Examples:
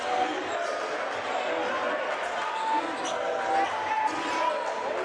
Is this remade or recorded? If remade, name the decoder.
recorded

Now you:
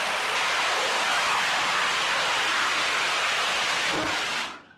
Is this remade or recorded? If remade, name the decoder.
recorded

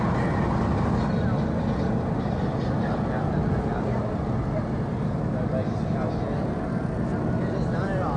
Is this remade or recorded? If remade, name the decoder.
recorded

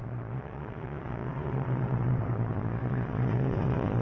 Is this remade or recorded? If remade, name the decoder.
remade, vocoder, Vocos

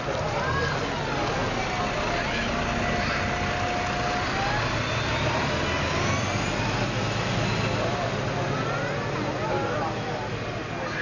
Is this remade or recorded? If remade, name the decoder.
recorded